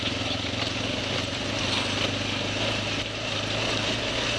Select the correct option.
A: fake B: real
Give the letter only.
B